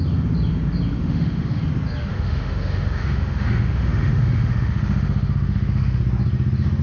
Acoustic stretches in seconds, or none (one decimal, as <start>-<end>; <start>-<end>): 0.0-1.0; 1.6-2.1; 6.0-6.8